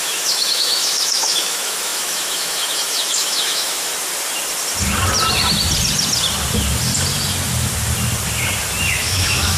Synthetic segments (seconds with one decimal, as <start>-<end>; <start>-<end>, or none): 0.0-3.9; 8.8-9.6